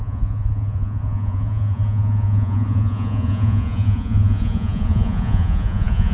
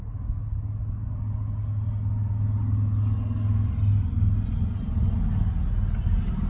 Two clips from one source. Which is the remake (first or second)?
first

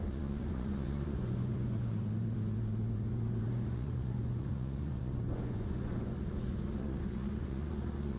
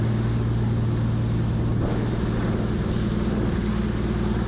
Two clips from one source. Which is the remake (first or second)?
first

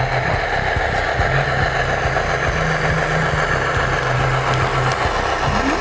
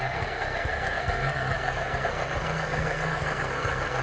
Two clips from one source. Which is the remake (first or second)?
second